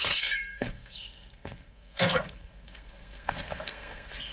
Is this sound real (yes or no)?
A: no